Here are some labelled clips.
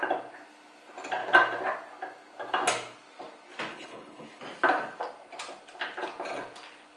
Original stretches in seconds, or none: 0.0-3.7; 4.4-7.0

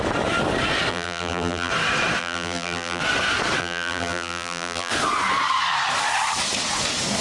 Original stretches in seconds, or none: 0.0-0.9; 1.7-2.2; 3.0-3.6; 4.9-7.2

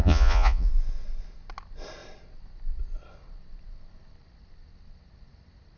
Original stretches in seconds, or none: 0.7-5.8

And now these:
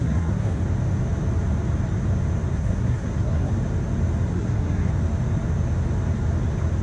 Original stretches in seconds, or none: 0.6-2.5; 3.5-4.3; 4.9-6.8

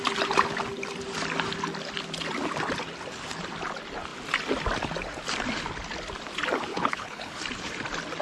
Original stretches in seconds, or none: 0.0-6.7; 7.4-8.2

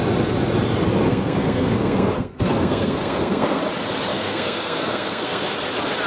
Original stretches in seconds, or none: 0.0-1.1; 3.6-4.1; 5.5-6.1